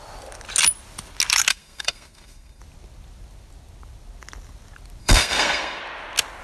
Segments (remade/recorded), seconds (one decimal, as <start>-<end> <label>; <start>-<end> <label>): 0.0-1.5 recorded; 1.5-2.6 remade; 2.6-5.0 recorded; 5.0-5.8 remade; 5.8-6.4 recorded